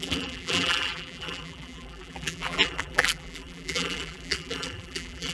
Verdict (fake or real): fake